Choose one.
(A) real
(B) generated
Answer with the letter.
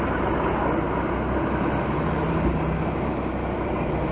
A